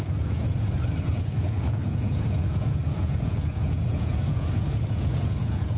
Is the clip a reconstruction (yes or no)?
yes